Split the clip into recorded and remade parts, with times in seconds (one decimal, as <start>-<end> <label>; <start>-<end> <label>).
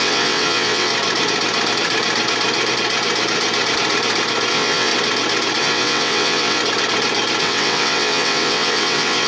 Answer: 0.0-0.9 remade; 0.9-4.5 recorded; 4.5-4.9 remade; 4.9-5.6 recorded; 5.6-6.6 remade; 6.6-7.4 recorded; 7.4-9.3 remade